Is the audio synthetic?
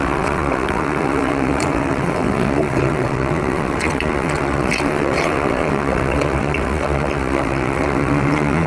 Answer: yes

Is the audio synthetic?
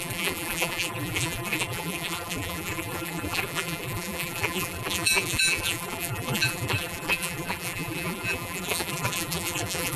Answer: yes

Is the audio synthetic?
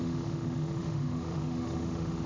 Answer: yes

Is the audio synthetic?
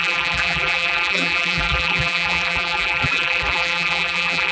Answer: yes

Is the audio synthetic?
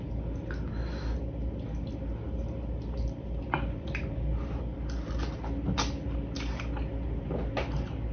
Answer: no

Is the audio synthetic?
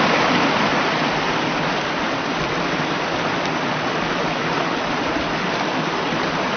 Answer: no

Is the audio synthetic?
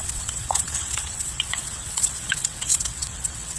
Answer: yes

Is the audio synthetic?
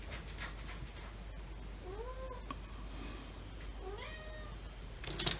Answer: no